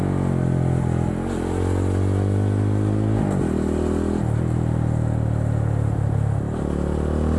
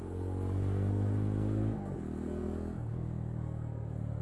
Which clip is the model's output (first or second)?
second